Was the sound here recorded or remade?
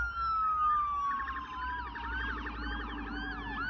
recorded